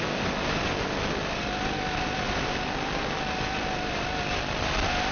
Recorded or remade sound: recorded